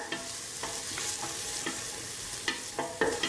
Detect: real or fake real